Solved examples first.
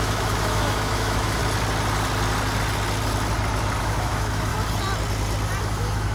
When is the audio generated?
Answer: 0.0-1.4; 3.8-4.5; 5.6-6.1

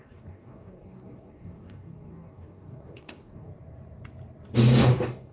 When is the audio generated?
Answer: 0.0-3.5; 4.8-5.3

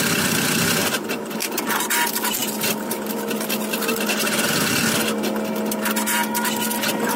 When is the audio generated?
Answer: none

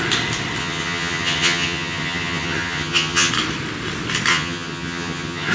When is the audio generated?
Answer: 0.6-3.3; 4.3-5.5